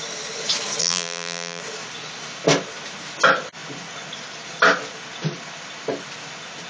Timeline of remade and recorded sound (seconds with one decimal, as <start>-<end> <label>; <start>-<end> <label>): 0.0-0.8 recorded; 0.8-1.6 remade; 1.6-6.7 recorded